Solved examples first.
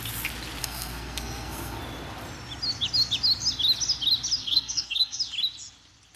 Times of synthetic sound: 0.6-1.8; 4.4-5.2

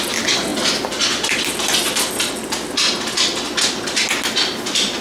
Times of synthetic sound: none

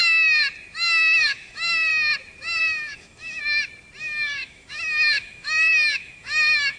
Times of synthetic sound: 1.2-1.9; 2.6-3.4; 4.0-6.8

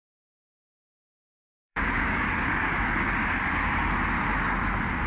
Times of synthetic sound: 0.9-3.5

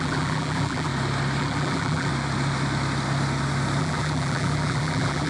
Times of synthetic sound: 0.0-0.9; 1.4-2.1; 3.8-5.3

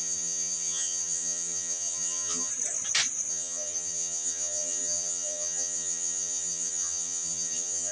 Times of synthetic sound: 0.0-2.5; 3.3-7.9

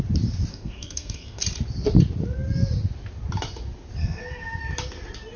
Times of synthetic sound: 0.5-1.4; 4.0-4.6

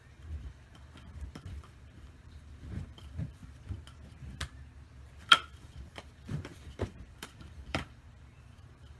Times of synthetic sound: 0.0-3.4; 5.2-9.0